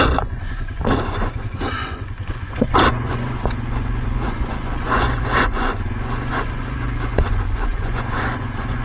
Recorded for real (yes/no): no